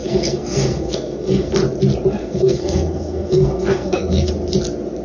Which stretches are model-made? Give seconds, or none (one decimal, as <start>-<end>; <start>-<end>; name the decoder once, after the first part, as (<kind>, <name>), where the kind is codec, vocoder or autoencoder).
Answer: 0.0-1.5 (codec, SNAC); 2.2-4.3